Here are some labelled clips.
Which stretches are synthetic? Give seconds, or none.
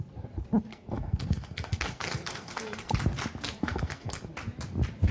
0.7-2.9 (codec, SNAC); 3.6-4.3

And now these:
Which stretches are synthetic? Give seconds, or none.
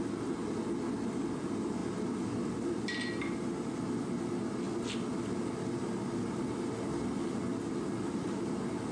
none